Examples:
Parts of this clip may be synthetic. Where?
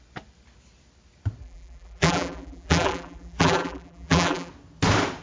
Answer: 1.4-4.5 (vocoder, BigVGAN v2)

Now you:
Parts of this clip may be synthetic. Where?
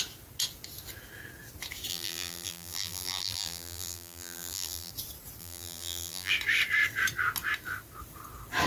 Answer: 1.9-4.9 (vocoder, BigVGAN v2); 5.4-6.3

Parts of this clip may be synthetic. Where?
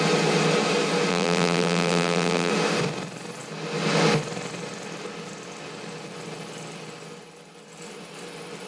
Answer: 1.1-2.5 (vocoder, BigVGAN v2)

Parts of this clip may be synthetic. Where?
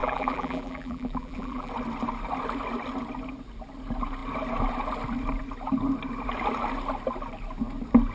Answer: 0.0-1.7 (vocoder, BigVGAN v2)